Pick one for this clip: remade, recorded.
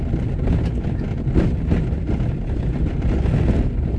recorded